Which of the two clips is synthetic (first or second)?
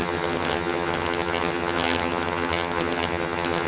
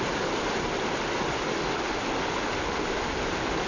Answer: first